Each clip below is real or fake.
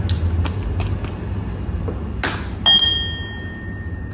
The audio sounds real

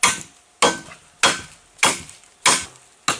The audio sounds real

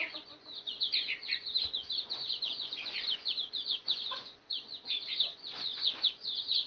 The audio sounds fake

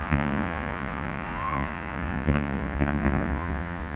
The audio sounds fake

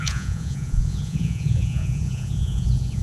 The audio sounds fake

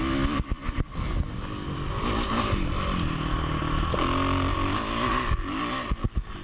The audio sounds real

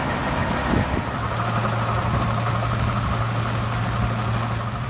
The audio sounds real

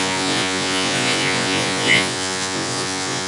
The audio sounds fake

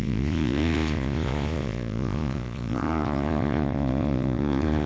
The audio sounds fake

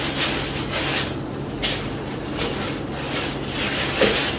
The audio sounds real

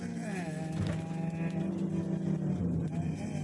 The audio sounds real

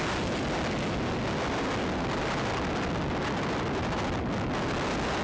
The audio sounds real